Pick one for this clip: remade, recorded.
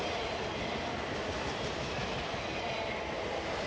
recorded